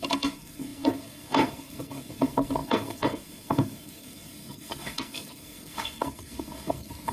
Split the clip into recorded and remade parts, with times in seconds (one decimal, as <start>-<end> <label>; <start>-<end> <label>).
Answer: 0.0-7.1 remade

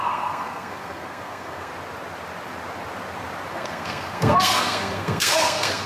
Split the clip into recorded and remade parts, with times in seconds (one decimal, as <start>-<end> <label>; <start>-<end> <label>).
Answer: 0.0-1.7 remade; 1.7-3.5 recorded; 3.5-5.9 remade

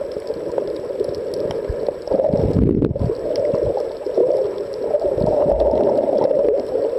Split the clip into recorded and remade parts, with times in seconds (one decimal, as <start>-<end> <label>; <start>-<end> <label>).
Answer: 0.0-4.2 remade; 4.2-5.5 recorded; 5.5-7.0 remade

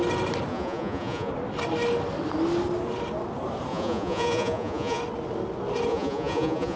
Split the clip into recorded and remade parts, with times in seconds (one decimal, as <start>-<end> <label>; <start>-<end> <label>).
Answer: 0.0-0.5 recorded; 0.5-1.3 remade; 1.3-3.7 recorded; 3.7-5.0 remade; 5.0-5.9 recorded; 5.9-6.8 remade

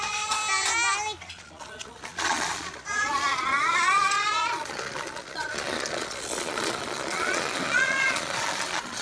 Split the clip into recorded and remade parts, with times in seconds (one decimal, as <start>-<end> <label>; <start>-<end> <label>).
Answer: 0.0-0.4 remade; 0.4-1.2 recorded; 1.2-9.0 remade

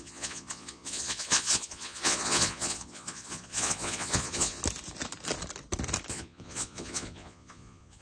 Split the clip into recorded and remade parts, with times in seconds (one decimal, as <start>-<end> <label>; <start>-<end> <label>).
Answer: 0.0-4.6 remade; 4.6-6.1 recorded; 6.1-8.0 remade